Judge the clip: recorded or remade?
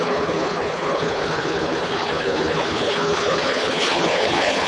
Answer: remade